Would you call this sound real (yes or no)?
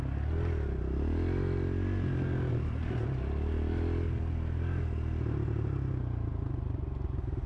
yes